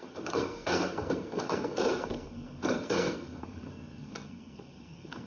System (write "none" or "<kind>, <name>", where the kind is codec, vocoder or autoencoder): codec, SNAC